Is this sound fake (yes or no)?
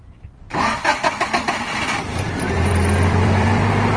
yes